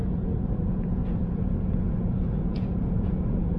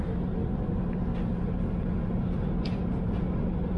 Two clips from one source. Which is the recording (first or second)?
second